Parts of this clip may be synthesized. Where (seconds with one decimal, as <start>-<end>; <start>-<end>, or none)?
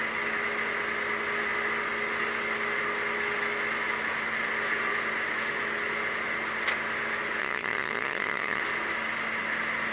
7.4-8.6